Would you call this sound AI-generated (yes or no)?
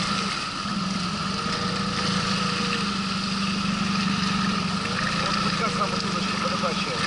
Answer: no